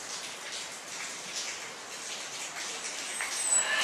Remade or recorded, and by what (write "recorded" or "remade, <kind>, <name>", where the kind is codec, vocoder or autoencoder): recorded